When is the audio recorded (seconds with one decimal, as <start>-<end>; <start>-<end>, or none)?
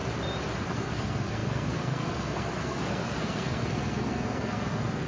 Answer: 0.0-0.6